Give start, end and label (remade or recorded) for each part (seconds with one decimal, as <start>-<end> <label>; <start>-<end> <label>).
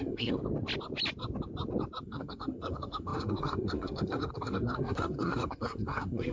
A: 0.0-0.4 remade; 0.4-2.0 recorded; 2.0-6.3 remade